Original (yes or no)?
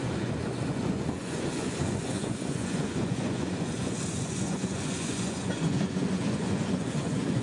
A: no